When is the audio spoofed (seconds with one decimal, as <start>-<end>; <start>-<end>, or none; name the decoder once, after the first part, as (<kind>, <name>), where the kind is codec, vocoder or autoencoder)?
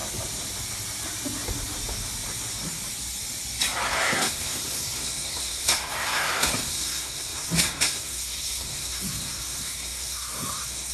3.9-10.9 (codec, SNAC)